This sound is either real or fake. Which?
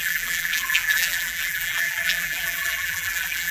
fake